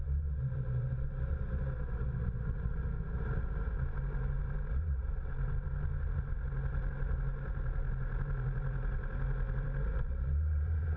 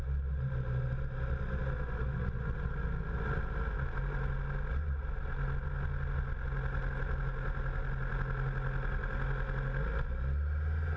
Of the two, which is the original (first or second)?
second